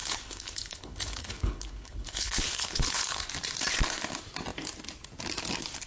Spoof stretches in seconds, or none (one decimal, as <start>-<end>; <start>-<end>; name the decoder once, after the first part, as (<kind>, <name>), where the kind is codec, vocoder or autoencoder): 0.0-3.3 (codec, HILCodec)